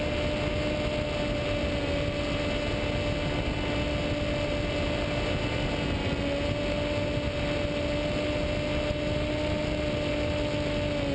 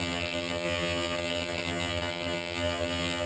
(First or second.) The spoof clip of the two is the second